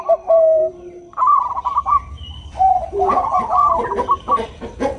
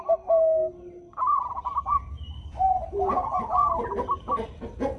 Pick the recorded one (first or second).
second